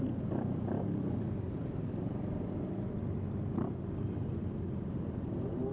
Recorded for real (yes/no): yes